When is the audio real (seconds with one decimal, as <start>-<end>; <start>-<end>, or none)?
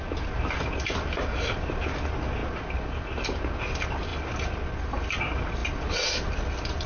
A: 0.0-6.9